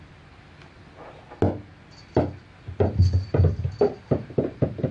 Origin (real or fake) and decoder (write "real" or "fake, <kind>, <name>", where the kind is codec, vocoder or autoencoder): real